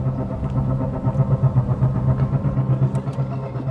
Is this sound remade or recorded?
recorded